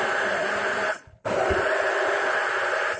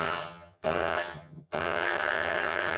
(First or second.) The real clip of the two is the first